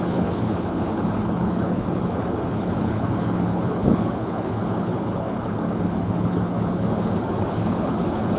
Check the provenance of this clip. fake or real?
fake